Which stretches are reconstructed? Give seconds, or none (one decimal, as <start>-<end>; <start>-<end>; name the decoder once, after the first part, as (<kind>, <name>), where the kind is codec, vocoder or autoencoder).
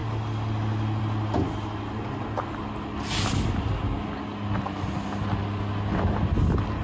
none